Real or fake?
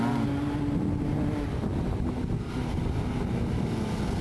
real